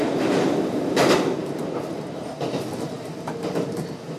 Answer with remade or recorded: recorded